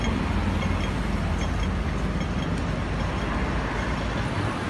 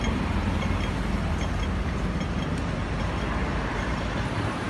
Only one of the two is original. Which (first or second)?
first